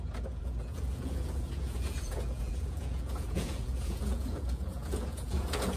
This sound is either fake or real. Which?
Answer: fake